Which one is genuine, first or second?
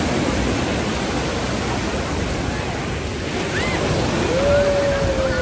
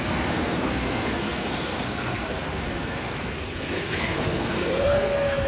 first